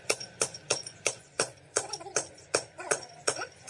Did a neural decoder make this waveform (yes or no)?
yes